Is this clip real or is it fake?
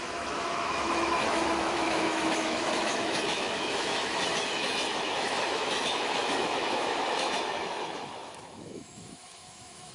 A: fake